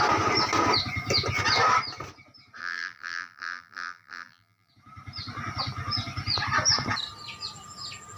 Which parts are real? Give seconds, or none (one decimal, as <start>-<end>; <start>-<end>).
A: 0.0-2.6; 4.7-8.2